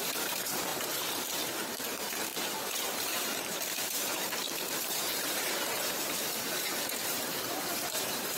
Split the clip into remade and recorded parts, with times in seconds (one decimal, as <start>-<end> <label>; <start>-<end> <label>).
0.0-8.4 remade